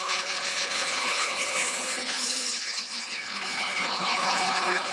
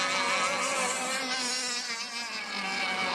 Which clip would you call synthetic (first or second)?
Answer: first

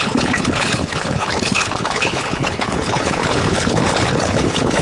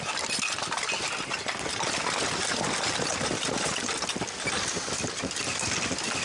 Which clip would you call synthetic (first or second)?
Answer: first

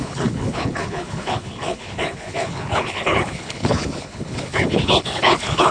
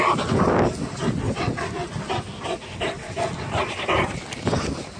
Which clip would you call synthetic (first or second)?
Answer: first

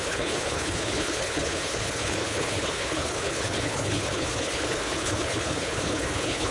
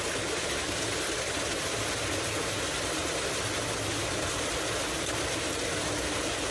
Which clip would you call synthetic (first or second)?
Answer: first